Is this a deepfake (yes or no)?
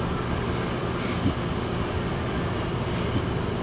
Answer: no